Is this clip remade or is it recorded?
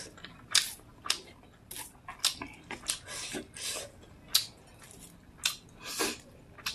recorded